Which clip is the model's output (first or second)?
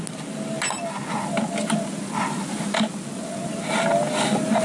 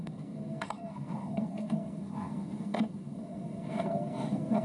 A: second